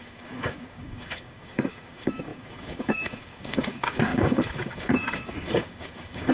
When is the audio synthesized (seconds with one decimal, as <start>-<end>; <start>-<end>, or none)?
0.0-6.3